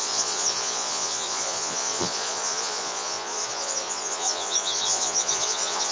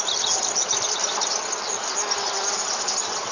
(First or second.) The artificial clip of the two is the first